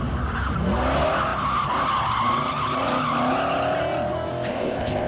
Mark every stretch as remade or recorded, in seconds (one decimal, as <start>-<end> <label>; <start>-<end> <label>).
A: 0.0-4.5 recorded; 4.5-5.1 remade